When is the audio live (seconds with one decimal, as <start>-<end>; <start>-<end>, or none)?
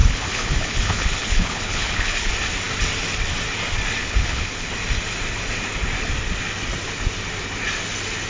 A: 2.3-4.0; 4.7-8.3